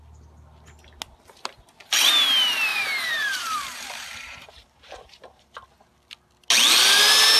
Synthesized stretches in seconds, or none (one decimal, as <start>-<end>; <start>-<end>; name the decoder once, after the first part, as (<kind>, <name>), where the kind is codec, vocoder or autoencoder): 2.7-5.4 (vocoder, BigVGAN v2)